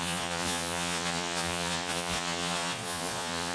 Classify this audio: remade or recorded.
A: remade